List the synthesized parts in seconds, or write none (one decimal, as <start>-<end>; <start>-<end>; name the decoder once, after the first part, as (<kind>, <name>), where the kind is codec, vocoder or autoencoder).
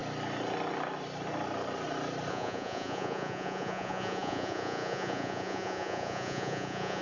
2.3-7.0 (vocoder, Vocos)